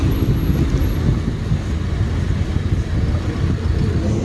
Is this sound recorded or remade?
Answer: recorded